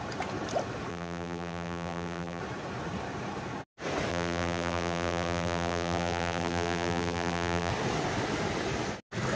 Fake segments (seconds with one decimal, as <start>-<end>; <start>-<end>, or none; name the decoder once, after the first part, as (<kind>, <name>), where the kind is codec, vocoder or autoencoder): 0.9-2.4 (vocoder, BigVGAN v2); 4.1-7.7